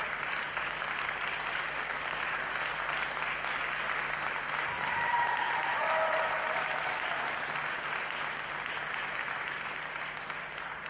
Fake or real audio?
real